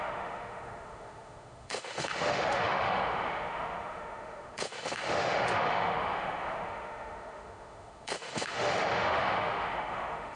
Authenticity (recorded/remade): remade